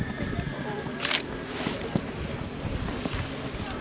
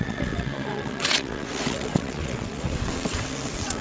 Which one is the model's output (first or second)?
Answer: second